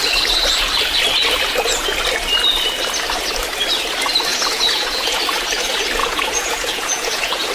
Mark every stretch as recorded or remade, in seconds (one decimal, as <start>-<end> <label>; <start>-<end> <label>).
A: 0.0-4.3 recorded; 4.3-5.2 remade; 5.2-6.0 recorded; 6.0-7.5 remade